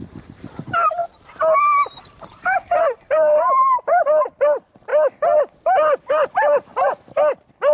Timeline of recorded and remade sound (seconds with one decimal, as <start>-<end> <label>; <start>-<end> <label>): 0.0-1.0 remade; 1.0-1.6 recorded; 1.6-4.9 remade; 4.9-6.0 recorded; 6.0-6.7 remade; 6.7-7.7 recorded